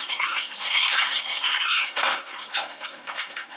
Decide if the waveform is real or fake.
fake